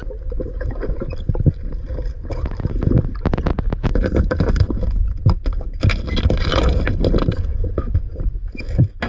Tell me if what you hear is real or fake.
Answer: real